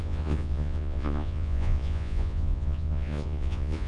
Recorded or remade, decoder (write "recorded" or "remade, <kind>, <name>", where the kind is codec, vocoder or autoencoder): remade, vocoder, Vocos